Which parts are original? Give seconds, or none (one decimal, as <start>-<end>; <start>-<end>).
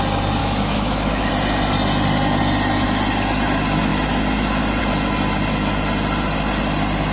0.0-0.4; 1.3-7.1